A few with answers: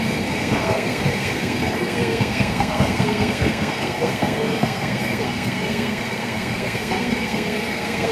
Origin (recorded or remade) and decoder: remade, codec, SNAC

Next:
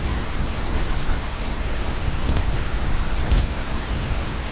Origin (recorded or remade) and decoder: remade, codec, SNAC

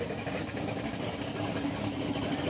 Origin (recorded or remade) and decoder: recorded